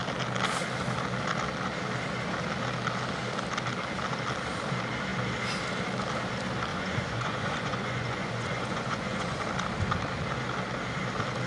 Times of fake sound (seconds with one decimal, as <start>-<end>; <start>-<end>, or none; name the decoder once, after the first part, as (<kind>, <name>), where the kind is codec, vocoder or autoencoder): 6.7-9.4 (vocoder, Vocos)